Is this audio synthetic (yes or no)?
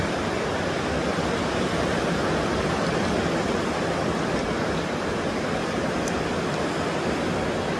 yes